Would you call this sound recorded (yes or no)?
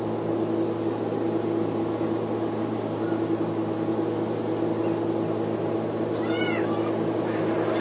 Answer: yes